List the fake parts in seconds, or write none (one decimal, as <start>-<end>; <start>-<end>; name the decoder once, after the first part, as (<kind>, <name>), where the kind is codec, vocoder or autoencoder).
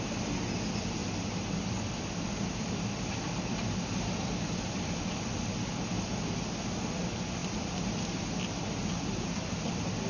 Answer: 1.0-5.1 (vocoder, BigVGAN v2); 7.4-8.4